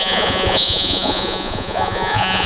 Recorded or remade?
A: remade